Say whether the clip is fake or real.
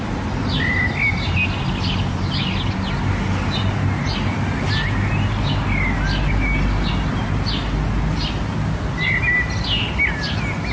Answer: real